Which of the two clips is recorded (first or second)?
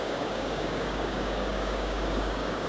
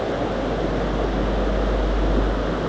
second